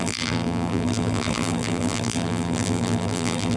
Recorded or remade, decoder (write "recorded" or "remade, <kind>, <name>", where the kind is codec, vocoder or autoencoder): remade, vocoder, BigVGAN v2